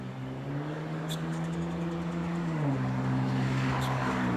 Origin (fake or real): fake